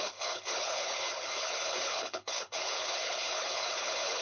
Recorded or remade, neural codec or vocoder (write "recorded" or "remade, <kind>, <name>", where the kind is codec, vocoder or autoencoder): remade, codec, HILCodec